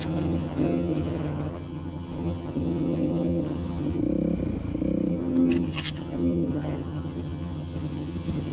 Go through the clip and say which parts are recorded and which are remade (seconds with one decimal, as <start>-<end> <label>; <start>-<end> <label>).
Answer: 0.0-4.0 remade; 4.0-5.1 recorded; 5.1-8.5 remade

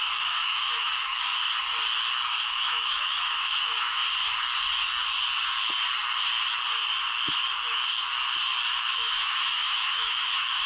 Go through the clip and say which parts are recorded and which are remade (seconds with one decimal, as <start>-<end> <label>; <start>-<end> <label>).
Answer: 0.0-1.3 remade; 1.3-2.4 recorded; 2.4-4.0 remade; 4.0-8.9 recorded; 8.9-10.7 remade

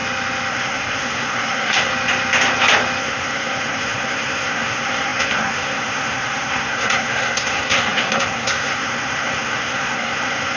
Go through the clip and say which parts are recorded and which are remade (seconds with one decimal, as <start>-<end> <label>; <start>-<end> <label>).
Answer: 0.0-0.5 recorded; 0.5-1.9 remade; 1.9-3.0 recorded; 3.0-10.6 remade

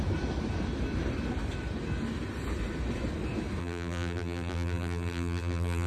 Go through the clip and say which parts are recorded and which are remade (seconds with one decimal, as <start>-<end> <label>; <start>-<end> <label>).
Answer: 0.0-3.6 recorded; 3.6-5.9 remade

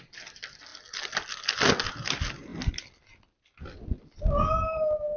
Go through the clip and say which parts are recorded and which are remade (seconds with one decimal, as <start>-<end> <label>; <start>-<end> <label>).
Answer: 0.0-5.2 recorded